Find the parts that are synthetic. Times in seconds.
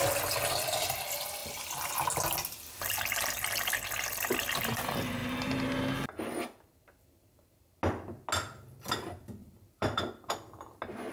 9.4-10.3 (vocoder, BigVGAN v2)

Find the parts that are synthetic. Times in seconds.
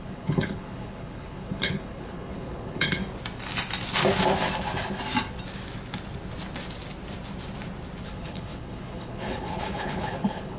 0.0-3.0 (codec, HILCodec); 8.0-10.6